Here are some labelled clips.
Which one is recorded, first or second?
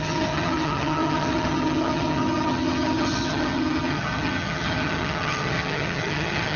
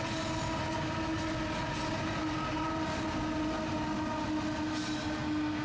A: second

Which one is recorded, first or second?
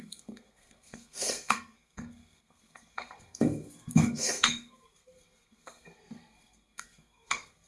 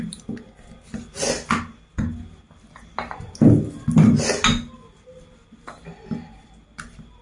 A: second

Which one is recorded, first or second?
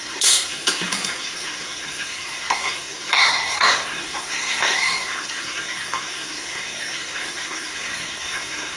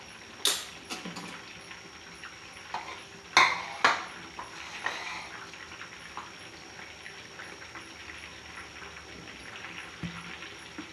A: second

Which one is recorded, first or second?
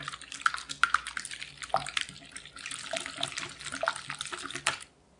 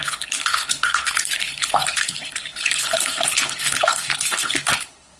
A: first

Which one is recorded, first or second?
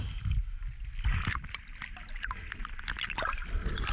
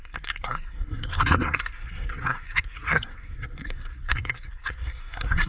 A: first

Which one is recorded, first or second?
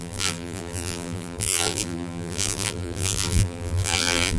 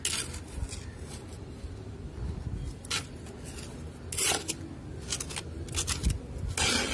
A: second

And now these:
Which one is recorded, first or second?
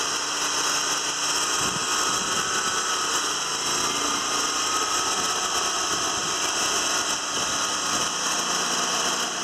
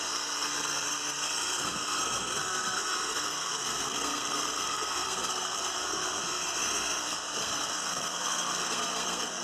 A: first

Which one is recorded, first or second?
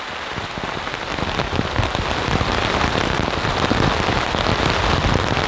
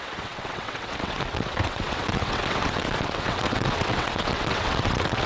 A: first